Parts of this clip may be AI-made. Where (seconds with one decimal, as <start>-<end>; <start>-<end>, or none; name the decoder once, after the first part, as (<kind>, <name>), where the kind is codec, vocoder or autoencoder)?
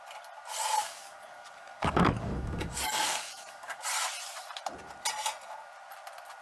0.8-3.8 (codec, DAC)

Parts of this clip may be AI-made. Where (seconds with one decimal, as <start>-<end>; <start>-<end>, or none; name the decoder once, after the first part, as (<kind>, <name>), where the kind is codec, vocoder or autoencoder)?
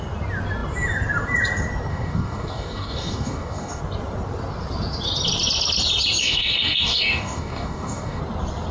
1.9-3.8 (codec, DAC); 6.2-8.2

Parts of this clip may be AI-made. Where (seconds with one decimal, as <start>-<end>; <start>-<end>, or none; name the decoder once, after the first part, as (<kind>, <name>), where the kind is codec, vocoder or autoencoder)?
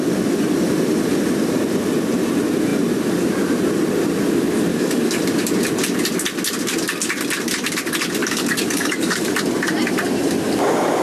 4.7-5.2 (codec, DAC); 8.2-9.3